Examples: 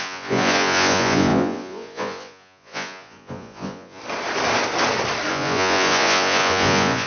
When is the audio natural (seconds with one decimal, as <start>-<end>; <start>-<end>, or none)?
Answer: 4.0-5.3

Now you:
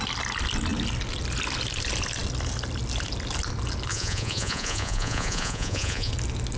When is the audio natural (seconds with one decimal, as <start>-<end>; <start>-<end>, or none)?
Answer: 0.0-3.9; 6.1-6.6

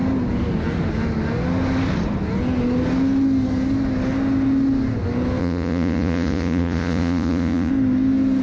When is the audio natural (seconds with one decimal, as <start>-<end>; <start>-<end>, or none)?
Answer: 0.0-5.4; 7.7-8.4

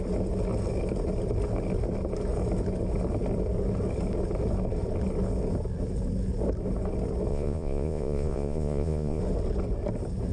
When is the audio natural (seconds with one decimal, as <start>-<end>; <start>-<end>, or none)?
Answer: 0.0-7.3; 9.2-10.3

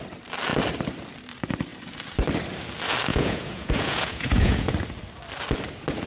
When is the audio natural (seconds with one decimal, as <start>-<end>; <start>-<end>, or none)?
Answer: 0.0-3.1; 4.7-6.1

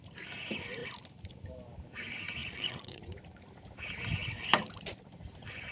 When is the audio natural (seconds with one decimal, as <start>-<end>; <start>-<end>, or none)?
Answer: 0.0-2.4; 3.4-5.7

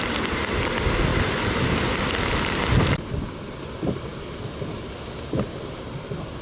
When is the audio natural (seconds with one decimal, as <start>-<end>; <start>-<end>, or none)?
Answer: 0.0-6.4